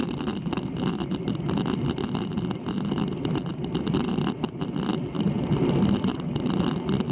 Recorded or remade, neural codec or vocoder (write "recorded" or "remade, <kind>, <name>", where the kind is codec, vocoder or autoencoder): recorded